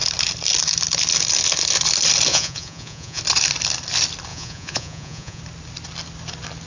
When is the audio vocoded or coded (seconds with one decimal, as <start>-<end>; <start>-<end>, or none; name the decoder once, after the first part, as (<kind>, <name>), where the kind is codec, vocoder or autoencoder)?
2.3-3.2 (vocoder, Vocos); 4.3-5.4